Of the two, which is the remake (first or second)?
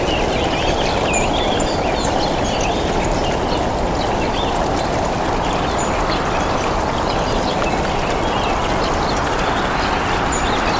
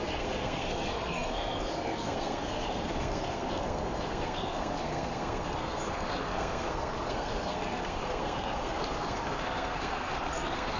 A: second